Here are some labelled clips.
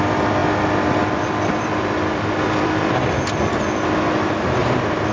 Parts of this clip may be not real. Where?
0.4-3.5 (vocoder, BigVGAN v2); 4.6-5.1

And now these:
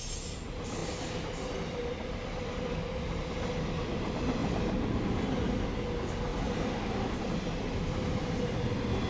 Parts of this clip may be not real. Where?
4.4-5.4 (vocoder, BigVGAN v2); 6.3-7.2

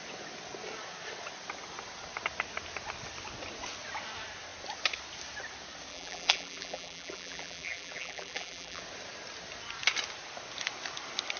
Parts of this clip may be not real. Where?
5.9-8.8 (vocoder, BigVGAN v2)

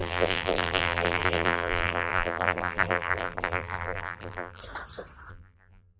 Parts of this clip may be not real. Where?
0.0-4.6 (vocoder, BigVGAN v2); 5.3-6.0

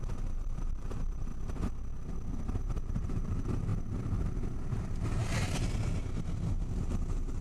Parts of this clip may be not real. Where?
0.0-1.3 (vocoder, BigVGAN v2); 2.6-3.7; 4.8-5.2; 6.7-7.4